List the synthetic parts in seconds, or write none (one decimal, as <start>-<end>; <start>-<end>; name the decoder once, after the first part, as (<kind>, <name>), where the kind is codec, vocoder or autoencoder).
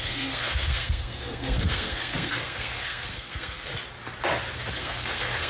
0.0-3.7 (codec, SNAC); 4.7-5.5